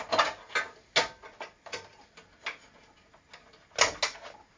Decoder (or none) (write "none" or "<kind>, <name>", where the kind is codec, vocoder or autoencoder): none